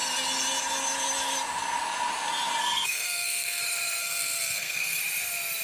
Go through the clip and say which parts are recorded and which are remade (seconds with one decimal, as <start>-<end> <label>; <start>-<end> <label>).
0.0-2.6 recorded; 2.6-3.6 remade; 3.6-4.0 recorded; 4.0-5.0 remade; 5.0-5.6 recorded